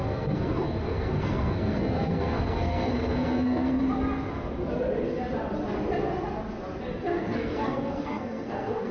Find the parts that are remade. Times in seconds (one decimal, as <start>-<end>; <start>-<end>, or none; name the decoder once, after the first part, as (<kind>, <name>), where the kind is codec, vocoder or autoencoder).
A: 0.0-3.8 (codec, SNAC); 6.9-8.9